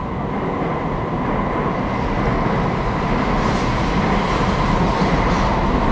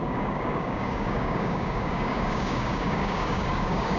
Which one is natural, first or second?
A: first